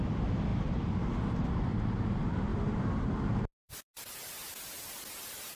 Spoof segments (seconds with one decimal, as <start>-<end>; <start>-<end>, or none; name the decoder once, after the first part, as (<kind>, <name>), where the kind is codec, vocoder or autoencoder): 0.5-1.5 (vocoder, BigVGAN v2); 2.5-3.9